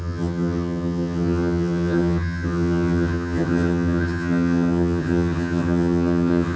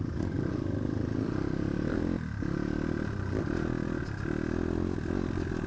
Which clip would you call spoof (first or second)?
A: first